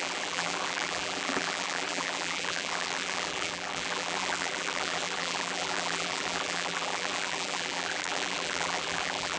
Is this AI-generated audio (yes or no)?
yes